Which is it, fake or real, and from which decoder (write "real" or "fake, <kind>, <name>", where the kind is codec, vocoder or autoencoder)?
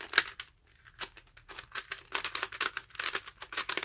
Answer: real